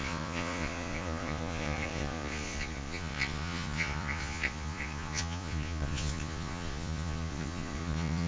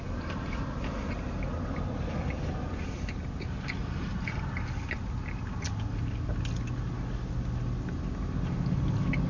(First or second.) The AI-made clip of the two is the first